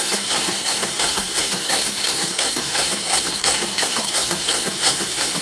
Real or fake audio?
fake